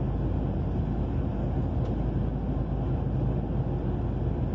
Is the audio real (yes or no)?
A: yes